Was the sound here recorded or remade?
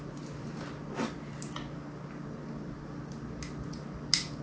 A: recorded